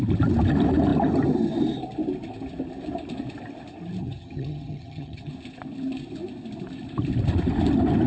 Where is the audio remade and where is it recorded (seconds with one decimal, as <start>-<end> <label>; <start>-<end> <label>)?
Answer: 0.0-4.0 recorded; 4.0-5.3 remade; 5.3-8.1 recorded